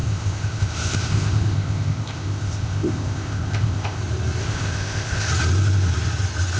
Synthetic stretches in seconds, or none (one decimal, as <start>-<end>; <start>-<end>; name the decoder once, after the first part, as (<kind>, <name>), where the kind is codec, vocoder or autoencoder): 0.0-4.0 (codec, ZipCodec); 4.4-5.3